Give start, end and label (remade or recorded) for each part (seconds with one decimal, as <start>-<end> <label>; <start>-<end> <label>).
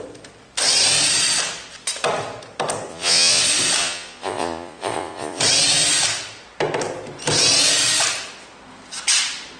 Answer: 0.0-2.9 recorded; 2.9-3.4 remade; 3.4-3.8 recorded; 3.8-5.4 remade; 5.4-9.6 recorded